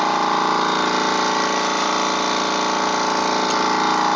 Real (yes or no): yes